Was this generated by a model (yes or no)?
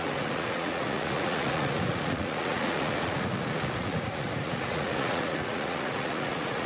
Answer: yes